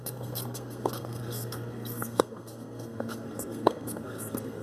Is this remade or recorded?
remade